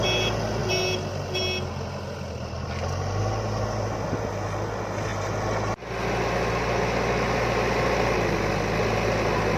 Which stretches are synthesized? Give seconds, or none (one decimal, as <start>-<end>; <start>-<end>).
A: none